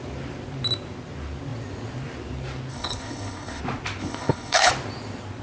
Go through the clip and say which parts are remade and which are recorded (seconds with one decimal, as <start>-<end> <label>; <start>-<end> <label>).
0.0-2.7 recorded; 2.7-3.6 remade; 3.6-4.0 recorded; 4.0-4.7 remade; 4.7-5.4 recorded